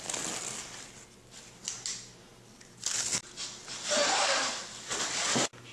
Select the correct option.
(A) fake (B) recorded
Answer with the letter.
B